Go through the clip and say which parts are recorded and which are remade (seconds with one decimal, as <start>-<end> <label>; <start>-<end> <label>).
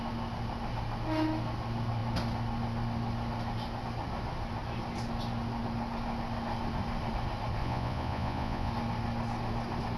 0.0-7.6 recorded; 7.6-8.7 remade; 8.7-10.0 recorded